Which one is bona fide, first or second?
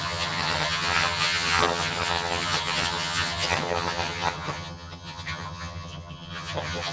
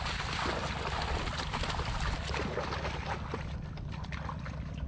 second